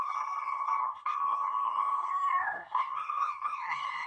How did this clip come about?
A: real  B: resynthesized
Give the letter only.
B